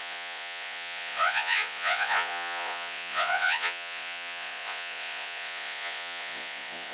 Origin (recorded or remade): remade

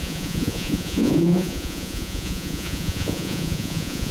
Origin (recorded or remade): remade